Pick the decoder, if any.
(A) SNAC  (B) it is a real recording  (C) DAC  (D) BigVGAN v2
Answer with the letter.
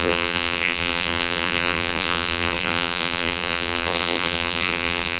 D